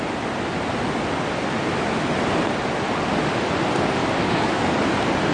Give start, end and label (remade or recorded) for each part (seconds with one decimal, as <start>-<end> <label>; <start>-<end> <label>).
0.0-4.0 recorded; 4.0-4.8 remade; 4.8-5.3 recorded